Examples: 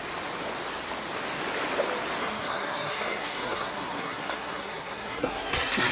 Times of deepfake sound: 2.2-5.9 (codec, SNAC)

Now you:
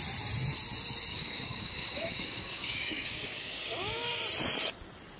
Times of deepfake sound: 1.1-4.2 (codec, DAC)

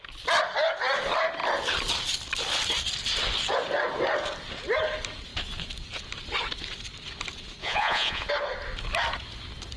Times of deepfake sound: 7.6-8.3 (vocoder, Vocos)

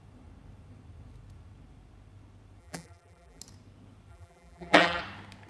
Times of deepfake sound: 2.6-3.4 (vocoder, BigVGAN v2); 4.1-5.0

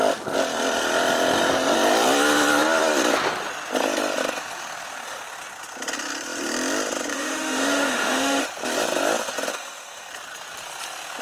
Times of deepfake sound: 7.1-8.4 (autoencoder, DAC-VAE); 9.5-10.1

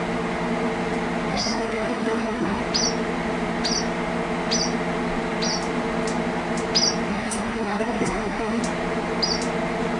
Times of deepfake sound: 1.3-2.6 (codec, SNAC); 7.1-8.6

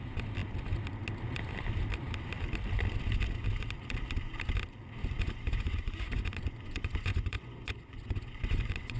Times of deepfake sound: 5.0-9.0 (vocoder, Vocos)